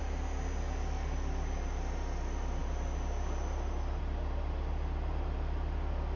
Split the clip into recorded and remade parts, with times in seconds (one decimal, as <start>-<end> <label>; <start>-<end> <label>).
0.0-6.2 recorded